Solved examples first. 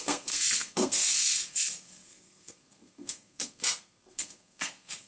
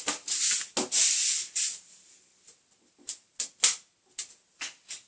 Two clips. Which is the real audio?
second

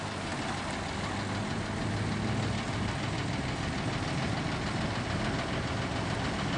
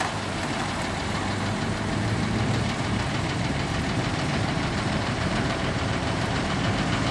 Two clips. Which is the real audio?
first